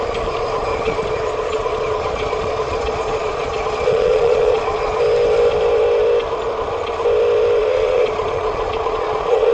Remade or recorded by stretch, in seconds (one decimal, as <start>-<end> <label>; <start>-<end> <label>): 0.0-0.7 recorded; 0.7-5.0 remade; 5.0-7.6 recorded; 7.6-9.5 remade